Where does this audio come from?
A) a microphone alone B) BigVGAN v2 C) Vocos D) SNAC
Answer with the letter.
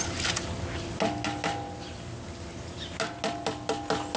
A